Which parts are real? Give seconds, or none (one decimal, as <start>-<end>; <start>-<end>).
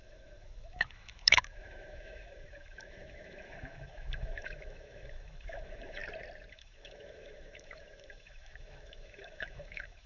6.0-6.5